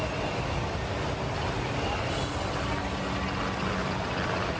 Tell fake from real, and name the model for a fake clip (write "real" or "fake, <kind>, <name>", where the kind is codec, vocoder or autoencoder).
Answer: real